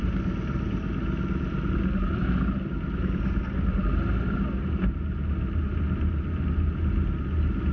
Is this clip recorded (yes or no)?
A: yes